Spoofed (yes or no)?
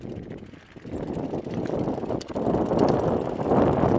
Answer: no